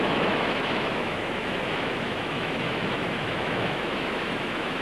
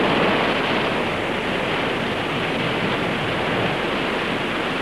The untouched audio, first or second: second